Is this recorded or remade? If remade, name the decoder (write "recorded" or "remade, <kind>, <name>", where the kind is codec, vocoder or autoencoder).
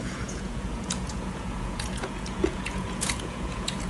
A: remade, vocoder, Vocos